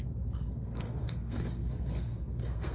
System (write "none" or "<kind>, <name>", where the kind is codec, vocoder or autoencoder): codec, SNAC